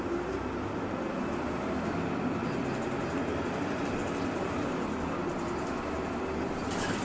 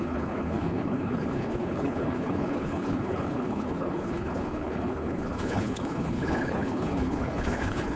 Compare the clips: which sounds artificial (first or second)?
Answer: second